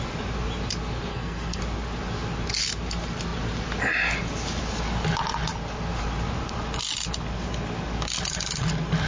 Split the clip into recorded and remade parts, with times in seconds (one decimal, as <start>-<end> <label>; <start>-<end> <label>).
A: 0.0-1.1 recorded; 1.1-1.6 remade; 1.6-9.1 recorded